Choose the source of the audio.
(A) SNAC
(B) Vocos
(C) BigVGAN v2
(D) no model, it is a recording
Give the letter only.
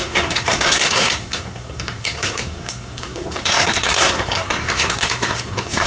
A